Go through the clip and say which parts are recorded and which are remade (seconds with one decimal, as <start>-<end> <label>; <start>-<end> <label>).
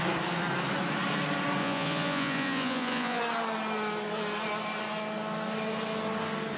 0.0-1.6 recorded; 1.6-3.2 remade; 3.2-6.6 recorded